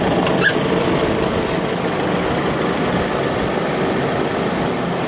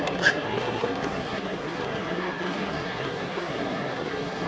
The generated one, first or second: second